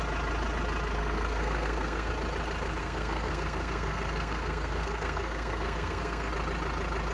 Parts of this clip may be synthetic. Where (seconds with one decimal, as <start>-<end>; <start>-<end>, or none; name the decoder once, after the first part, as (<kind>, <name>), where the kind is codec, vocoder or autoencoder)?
1.0-2.1 (codec, SNAC); 2.8-6.3